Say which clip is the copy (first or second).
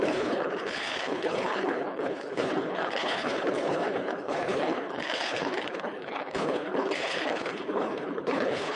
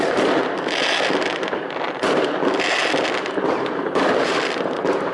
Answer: first